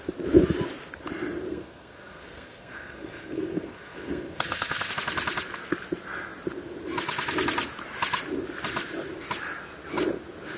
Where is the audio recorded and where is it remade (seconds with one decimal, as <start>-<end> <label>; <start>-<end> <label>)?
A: 0.0-1.5 recorded; 1.5-4.9 remade; 4.9-10.6 recorded